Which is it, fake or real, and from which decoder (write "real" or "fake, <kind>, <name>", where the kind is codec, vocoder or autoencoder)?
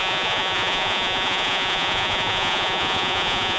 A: fake, vocoder, Vocos